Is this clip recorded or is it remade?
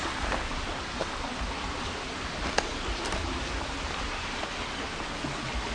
recorded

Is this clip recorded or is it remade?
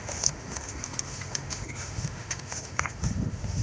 remade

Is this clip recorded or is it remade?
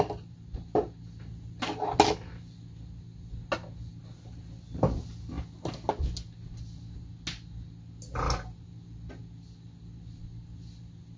recorded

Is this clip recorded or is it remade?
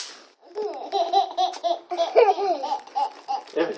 recorded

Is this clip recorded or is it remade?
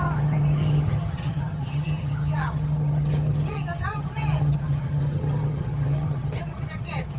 remade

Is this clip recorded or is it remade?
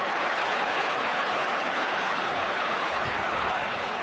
remade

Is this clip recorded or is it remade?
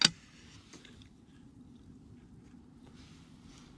recorded